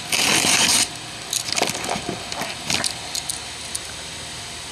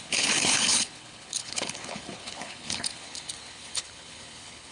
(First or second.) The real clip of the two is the first